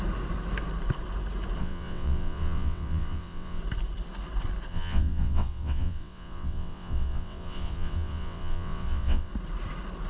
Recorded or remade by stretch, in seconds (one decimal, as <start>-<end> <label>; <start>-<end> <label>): 0.0-1.6 recorded; 1.6-3.6 remade; 3.6-4.7 recorded; 4.7-9.3 remade; 9.3-10.1 recorded